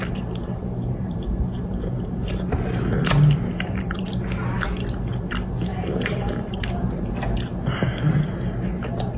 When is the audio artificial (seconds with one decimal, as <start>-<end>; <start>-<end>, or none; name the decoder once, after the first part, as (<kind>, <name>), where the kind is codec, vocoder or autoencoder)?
0.4-4.0 (vocoder, BigVGAN v2); 5.7-7.2